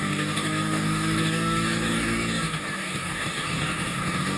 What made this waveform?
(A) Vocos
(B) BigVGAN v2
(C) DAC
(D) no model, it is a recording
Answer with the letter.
C